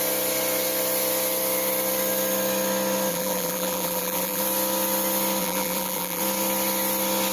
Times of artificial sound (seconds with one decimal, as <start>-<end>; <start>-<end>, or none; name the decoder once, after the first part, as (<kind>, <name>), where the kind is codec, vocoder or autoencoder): 3.1-4.4 (vocoder, BigVGAN v2); 5.4-6.2